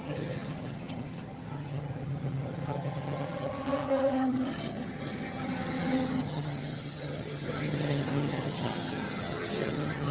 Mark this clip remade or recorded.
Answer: remade